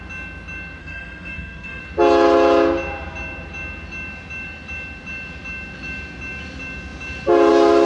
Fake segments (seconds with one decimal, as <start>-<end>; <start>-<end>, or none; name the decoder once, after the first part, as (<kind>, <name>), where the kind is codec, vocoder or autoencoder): 0.8-1.8 (codec, SNAC)